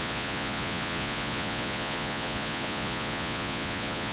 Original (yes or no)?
no